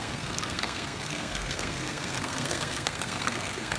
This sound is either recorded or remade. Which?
remade